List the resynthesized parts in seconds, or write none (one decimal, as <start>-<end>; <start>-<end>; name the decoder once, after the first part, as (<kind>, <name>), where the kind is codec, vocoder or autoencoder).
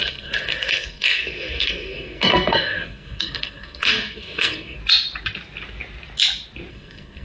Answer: 0.0-4.8 (codec, SNAC); 6.7-7.2